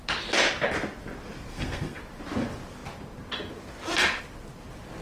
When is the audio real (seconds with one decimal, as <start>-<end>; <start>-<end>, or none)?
0.0-1.5; 2.0-5.0